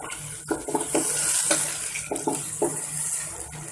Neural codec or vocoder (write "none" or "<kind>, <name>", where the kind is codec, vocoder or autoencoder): none